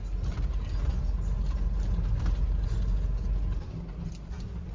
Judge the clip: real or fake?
real